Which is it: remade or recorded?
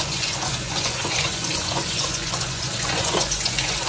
remade